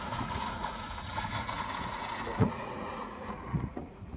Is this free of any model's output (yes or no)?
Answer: no